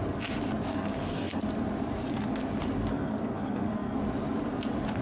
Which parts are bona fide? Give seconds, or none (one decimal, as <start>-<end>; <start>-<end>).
0.0-0.7; 1.4-2.9; 4.0-5.0